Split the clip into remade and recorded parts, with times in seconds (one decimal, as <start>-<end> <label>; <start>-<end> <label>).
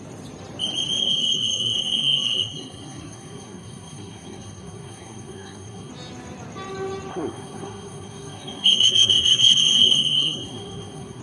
0.0-1.0 recorded; 1.0-5.9 remade; 5.9-7.1 recorded; 7.1-11.2 remade